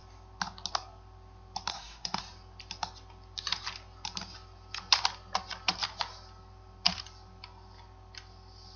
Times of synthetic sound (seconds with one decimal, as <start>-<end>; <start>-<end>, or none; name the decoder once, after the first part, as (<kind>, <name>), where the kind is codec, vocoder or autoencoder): 1.7-2.2 (codec, SNAC)